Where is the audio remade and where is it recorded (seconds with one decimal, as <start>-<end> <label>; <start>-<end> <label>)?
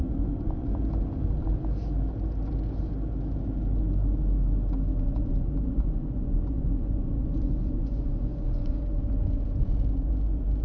0.0-0.7 remade; 0.7-5.0 recorded; 5.0-10.6 remade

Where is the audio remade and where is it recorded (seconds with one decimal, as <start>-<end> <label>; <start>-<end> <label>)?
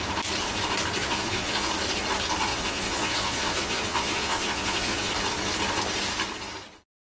0.0-1.0 recorded; 1.0-1.7 remade; 1.7-2.5 recorded; 2.5-5.1 remade; 5.1-7.1 recorded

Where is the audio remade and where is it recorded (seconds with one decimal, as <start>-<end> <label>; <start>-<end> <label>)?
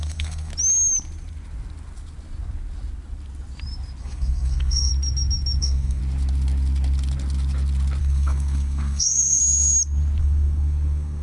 0.0-0.5 remade; 0.5-4.0 recorded; 4.0-4.9 remade; 4.9-5.6 recorded; 5.6-6.0 remade; 6.0-8.0 recorded; 8.0-9.4 remade; 9.4-10.2 recorded; 10.2-11.2 remade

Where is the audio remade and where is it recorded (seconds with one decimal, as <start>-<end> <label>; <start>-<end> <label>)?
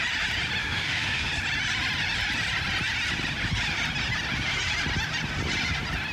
0.0-0.6 recorded; 0.6-1.3 remade; 1.3-6.1 recorded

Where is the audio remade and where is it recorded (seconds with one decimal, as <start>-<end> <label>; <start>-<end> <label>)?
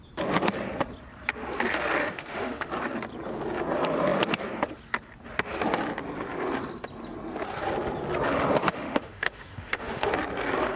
0.0-2.0 recorded; 2.0-2.7 remade; 2.7-8.6 recorded; 8.6-10.1 remade; 10.1-10.8 recorded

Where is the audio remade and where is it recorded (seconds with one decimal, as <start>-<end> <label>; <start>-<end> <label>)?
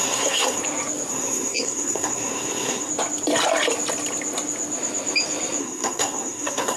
0.0-0.6 remade; 0.6-1.1 recorded; 1.1-2.9 remade; 2.9-5.6 recorded; 5.6-6.8 remade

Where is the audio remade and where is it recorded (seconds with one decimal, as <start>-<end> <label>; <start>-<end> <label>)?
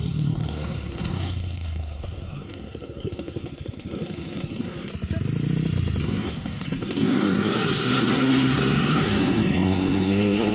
0.0-4.9 remade; 4.9-6.0 recorded; 6.0-10.5 remade